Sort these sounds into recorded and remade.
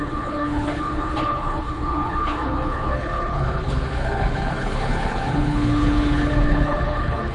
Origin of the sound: remade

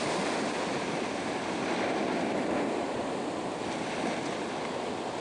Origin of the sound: recorded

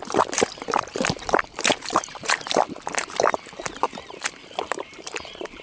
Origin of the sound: remade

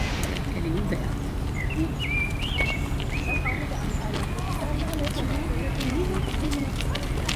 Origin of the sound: recorded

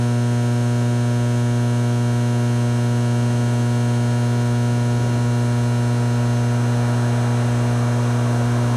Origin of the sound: recorded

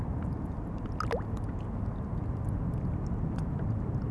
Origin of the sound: recorded